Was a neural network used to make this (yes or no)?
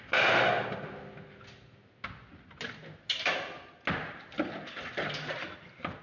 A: no